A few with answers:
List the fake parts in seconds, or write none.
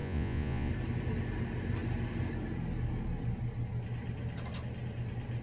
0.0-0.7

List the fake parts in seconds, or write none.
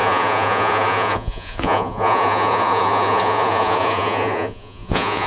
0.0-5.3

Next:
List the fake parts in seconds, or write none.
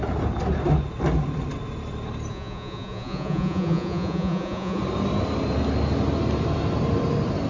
2.3-4.8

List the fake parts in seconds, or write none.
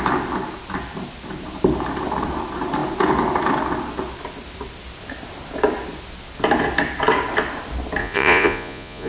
8.0-9.1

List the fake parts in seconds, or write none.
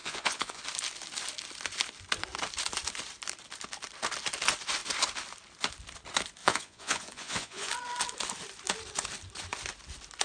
0.0-0.6; 6.4-7.7